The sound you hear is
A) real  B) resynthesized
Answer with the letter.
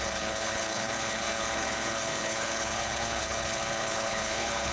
B